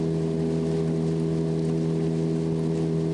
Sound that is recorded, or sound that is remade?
recorded